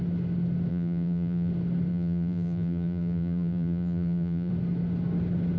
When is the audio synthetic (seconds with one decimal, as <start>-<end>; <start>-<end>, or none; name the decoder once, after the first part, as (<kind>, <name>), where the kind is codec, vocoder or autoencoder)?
0.7-1.5 (vocoder, BigVGAN v2); 1.9-4.5